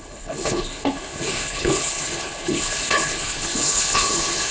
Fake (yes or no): yes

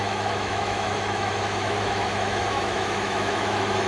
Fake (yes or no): yes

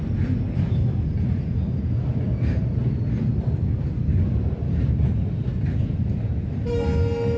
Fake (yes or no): no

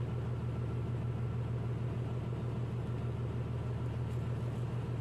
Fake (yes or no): no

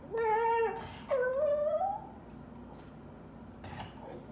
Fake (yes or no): no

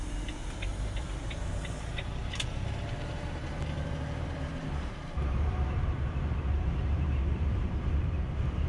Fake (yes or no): yes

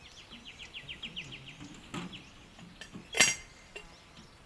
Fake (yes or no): no